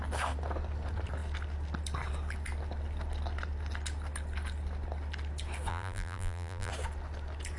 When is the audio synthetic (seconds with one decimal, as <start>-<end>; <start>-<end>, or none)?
5.7-6.7